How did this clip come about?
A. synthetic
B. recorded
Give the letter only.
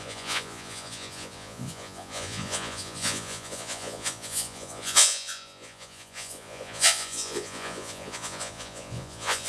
A